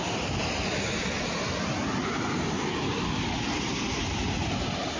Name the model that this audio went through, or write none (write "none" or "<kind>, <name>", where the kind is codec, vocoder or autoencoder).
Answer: none